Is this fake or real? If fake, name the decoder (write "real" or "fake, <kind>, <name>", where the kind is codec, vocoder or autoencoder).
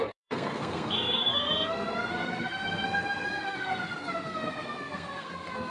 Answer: fake, codec, SNAC